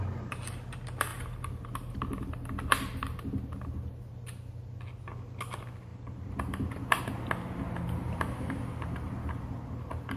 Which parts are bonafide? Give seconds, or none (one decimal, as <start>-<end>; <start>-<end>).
0.0-1.1; 4.7-5.9; 7.0-10.2